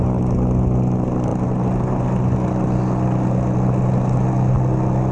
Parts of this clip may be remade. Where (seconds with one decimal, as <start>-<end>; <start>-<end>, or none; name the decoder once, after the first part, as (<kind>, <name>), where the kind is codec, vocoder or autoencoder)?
none